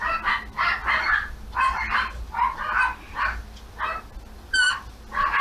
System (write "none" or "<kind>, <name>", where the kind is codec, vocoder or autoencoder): none